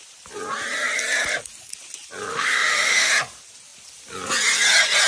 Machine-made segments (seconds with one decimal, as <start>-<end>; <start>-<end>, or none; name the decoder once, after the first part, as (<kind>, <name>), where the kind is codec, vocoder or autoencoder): 2.3-3.1 (autoencoder, DAC-VAE)